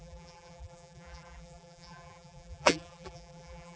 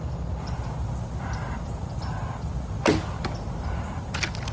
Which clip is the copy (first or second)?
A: first